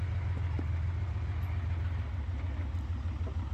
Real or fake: real